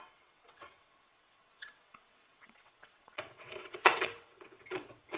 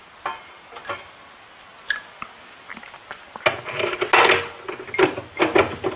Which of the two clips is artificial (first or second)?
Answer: first